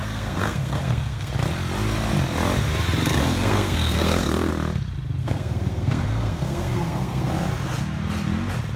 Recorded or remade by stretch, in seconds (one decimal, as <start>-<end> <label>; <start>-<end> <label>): 0.0-1.3 remade; 1.3-3.1 recorded; 3.1-4.5 remade; 4.5-5.2 recorded; 5.2-7.3 remade; 7.3-8.8 recorded